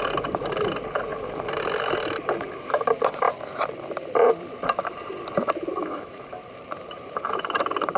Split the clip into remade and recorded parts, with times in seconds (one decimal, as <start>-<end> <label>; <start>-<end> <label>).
0.0-5.8 recorded; 5.8-6.3 remade; 6.3-8.0 recorded